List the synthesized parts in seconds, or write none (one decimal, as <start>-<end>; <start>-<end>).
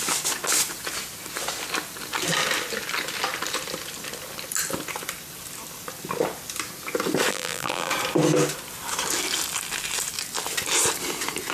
7.3-7.9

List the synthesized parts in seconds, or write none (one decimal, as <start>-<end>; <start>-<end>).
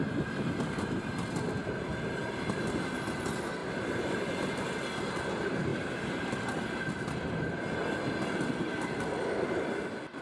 0.0-1.2; 1.6-2.6; 3.6-4.5; 5.7-6.4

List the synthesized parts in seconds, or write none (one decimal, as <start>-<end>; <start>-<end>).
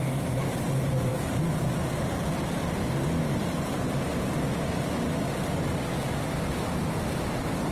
none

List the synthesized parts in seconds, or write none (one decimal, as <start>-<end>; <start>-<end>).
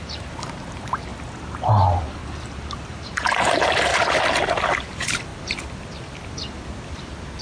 0.0-1.1; 2.2-3.9; 4.8-5.3; 7.0-7.4